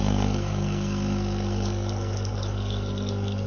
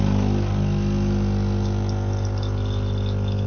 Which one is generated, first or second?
first